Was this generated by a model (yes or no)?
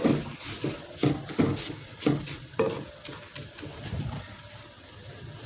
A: no